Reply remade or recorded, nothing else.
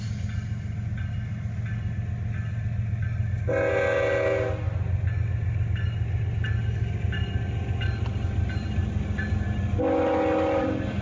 recorded